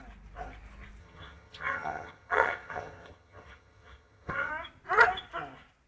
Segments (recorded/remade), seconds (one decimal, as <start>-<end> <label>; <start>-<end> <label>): 0.0-1.0 recorded; 1.0-4.5 remade; 4.5-5.9 recorded